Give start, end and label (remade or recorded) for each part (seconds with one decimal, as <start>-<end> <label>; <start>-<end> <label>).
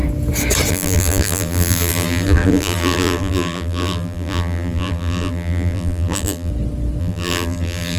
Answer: 0.0-0.7 recorded; 0.7-6.5 remade; 6.5-7.0 recorded; 7.0-8.0 remade